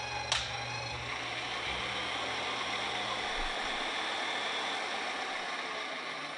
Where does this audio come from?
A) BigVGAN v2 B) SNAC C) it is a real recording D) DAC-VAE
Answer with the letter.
C